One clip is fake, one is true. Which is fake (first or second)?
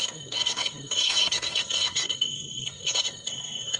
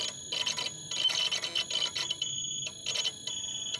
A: first